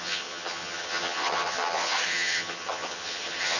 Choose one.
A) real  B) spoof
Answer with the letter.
B